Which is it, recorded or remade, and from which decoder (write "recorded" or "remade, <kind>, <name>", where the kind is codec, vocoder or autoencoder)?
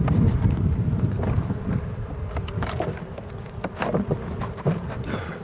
remade, vocoder, BigVGAN v2